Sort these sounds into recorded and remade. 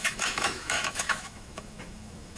remade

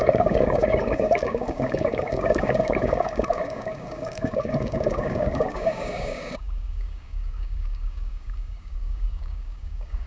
remade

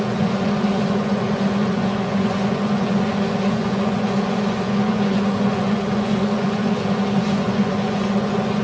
remade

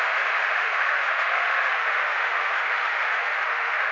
remade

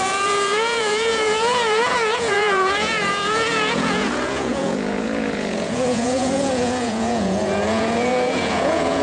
remade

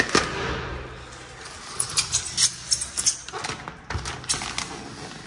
recorded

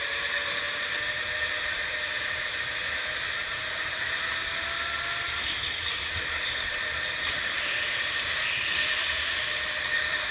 recorded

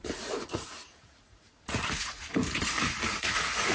remade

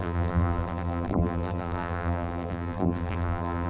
remade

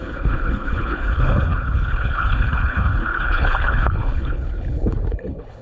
remade